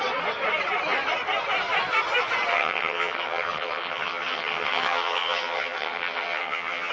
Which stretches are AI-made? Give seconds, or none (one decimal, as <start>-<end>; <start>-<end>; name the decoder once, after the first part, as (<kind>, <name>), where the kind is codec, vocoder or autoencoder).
2.5-6.9 (vocoder, HiFi-GAN)

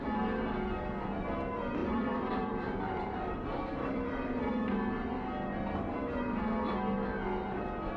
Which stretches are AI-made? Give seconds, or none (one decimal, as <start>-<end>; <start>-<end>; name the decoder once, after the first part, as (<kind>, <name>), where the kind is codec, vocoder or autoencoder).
1.8-4.5 (vocoder, BigVGAN v2)

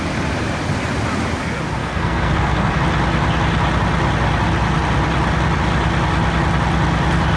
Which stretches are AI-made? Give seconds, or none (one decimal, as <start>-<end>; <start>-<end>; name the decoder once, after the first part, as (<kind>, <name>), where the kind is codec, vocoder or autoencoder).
1.8-2.7 (codec, SNAC)

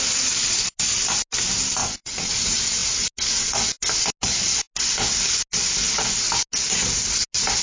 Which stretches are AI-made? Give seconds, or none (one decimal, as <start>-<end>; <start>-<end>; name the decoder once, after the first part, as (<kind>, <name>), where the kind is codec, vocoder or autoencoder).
1.8-2.3 (vocoder, WaveNeXt)

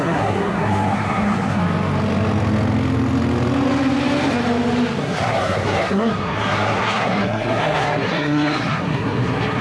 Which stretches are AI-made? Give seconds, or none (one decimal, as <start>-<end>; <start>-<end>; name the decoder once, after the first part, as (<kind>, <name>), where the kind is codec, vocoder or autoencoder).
0.0-1.6 (codec, SNAC); 5.0-9.6

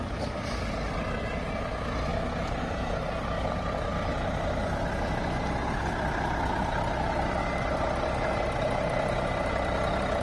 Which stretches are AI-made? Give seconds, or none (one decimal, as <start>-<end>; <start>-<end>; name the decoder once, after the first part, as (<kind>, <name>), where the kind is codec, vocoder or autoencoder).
none

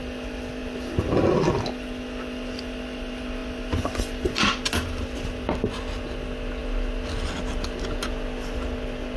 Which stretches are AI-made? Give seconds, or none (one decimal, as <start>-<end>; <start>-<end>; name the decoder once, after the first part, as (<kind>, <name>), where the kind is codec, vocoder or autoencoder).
none

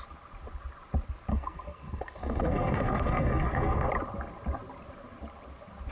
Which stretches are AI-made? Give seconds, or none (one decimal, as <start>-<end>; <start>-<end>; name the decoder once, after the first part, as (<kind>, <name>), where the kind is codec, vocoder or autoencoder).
1.3-3.9 (codec, SNAC)